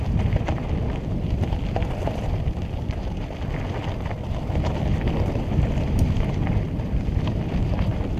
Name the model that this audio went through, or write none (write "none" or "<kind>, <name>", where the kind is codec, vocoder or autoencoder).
vocoder, BigVGAN v2